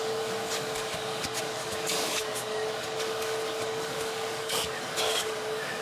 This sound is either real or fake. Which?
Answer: fake